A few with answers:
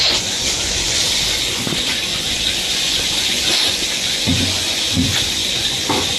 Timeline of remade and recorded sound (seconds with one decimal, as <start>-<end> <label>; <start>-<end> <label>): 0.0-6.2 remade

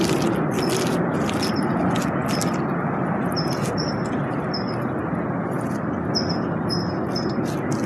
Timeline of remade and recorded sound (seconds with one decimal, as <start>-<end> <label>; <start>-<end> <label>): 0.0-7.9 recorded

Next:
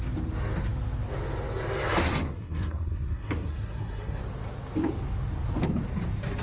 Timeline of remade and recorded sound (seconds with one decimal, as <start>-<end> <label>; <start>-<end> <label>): 0.0-2.3 recorded; 2.3-4.2 remade; 4.2-6.4 recorded